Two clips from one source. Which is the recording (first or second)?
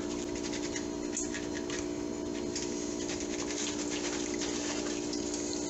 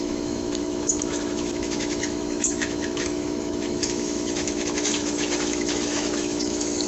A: first